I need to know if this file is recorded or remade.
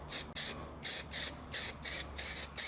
recorded